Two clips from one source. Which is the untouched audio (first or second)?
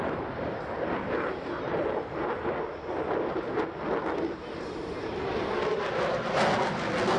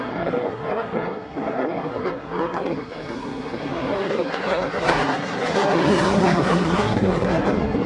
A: first